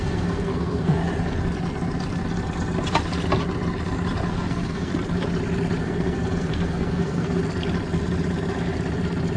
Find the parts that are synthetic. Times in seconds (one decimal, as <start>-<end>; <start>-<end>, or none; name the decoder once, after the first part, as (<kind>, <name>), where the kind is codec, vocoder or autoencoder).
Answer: 0.0-1.0 (codec, SNAC); 4.3-4.9; 5.8-7.4

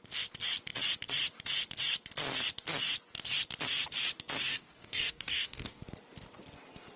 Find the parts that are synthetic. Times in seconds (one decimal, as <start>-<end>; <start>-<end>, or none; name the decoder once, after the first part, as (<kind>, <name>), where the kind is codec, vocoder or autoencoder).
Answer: 4.5-5.8 (codec, DAC)

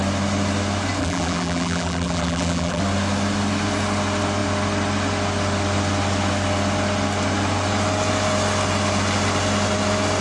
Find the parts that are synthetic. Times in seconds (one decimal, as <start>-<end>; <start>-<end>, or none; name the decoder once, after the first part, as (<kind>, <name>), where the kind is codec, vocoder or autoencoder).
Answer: 1.0-2.8 (vocoder, BigVGAN v2)

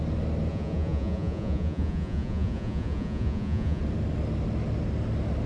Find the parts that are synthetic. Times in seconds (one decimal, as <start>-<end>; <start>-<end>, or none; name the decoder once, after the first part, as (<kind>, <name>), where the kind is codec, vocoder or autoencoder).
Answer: 0.5-3.8 (vocoder, Vocos)

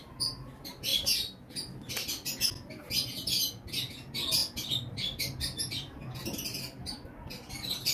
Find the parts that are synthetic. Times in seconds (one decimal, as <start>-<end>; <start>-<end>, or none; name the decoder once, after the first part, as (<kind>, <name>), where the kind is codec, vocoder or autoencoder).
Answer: none

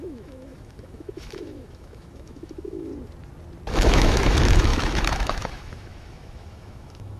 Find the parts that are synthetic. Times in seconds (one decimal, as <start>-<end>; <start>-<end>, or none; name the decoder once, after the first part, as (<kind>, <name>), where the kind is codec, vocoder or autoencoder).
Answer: 0.0-2.9 (autoencoder, DAC-VAE); 3.7-7.2

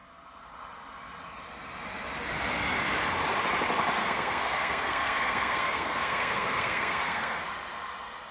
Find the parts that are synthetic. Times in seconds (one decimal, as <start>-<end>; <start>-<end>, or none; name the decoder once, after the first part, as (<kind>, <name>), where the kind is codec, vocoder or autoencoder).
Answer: 4.0-7.4 (codec, SNAC)